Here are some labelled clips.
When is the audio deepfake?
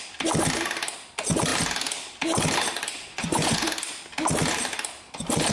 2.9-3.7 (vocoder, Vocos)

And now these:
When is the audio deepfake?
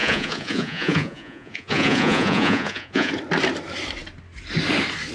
0.0-3.1 (vocoder, Vocos)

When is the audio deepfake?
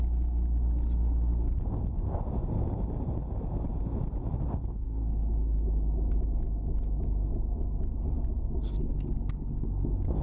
none